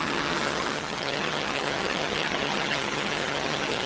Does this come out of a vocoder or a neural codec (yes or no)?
yes